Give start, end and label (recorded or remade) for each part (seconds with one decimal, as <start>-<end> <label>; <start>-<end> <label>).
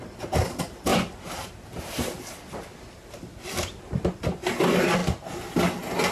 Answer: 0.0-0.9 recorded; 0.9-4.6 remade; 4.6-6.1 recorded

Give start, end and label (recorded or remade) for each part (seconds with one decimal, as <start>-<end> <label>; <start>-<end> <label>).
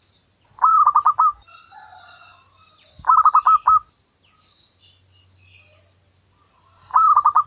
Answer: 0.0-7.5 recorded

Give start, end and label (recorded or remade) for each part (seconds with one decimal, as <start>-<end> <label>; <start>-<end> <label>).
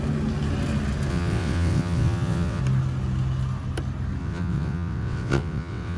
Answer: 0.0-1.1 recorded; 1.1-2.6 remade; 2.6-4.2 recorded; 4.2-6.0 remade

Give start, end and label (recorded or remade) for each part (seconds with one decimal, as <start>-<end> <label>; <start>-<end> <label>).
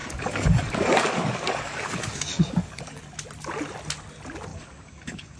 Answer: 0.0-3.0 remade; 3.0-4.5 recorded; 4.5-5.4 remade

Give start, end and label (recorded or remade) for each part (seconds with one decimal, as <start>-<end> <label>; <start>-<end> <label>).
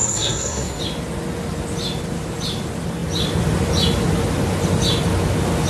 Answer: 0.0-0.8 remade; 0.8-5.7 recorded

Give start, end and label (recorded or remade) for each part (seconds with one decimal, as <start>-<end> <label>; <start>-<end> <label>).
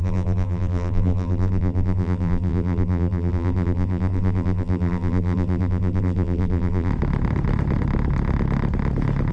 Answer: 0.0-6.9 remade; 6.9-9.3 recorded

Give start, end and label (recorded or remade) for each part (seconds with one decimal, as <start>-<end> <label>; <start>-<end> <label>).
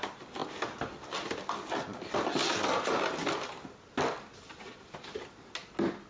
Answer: 0.0-6.1 recorded